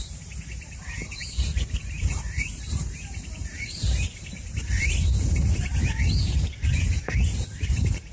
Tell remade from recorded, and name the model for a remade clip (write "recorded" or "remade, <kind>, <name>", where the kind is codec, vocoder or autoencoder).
remade, vocoder, BigVGAN v2